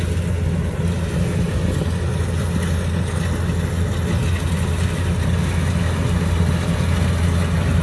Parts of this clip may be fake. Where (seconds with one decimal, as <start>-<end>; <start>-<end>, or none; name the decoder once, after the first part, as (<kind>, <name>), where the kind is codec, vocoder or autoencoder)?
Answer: none